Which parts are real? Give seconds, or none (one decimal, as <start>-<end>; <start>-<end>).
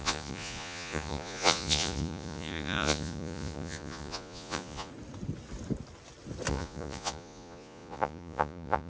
4.9-6.5